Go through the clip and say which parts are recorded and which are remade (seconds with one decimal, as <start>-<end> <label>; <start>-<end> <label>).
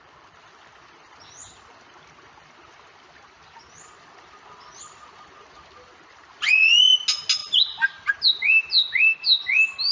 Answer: 0.0-9.9 recorded